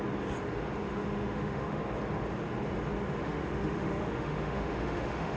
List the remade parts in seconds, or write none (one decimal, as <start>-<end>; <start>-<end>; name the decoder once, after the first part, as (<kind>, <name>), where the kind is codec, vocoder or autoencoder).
0.8-1.8 (autoencoder, DAC-VAE); 3.2-5.4